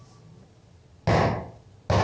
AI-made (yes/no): no